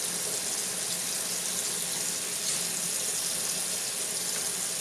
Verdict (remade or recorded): recorded